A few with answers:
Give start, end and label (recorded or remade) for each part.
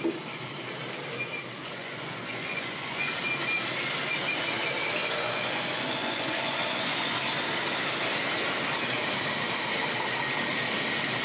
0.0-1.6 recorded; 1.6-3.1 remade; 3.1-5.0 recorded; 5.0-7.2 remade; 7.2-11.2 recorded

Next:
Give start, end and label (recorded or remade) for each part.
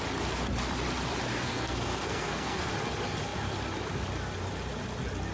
0.0-1.3 recorded; 1.3-2.7 remade; 2.7-5.3 recorded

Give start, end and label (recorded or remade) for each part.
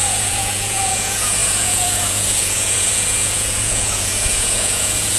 0.0-5.2 remade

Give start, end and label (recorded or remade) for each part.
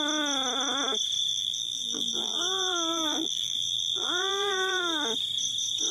0.0-1.3 recorded; 1.3-4.8 remade; 4.8-5.9 recorded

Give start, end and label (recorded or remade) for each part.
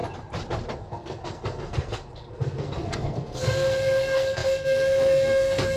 0.0-0.8 recorded; 0.8-5.8 remade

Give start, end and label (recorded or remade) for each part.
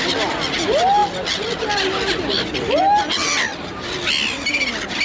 0.0-5.0 recorded